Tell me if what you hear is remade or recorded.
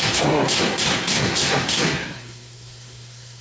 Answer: remade